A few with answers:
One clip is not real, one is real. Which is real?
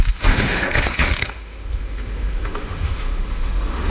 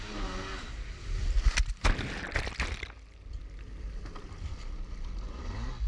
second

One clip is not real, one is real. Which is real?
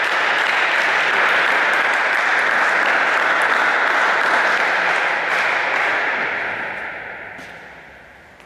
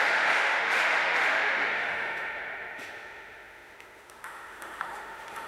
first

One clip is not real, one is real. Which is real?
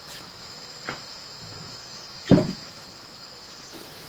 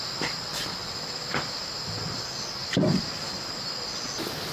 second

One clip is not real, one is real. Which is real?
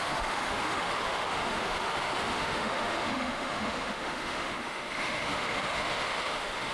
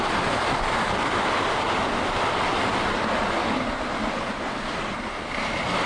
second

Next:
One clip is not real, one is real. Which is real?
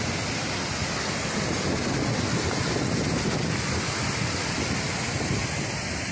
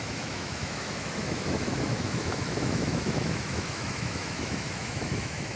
first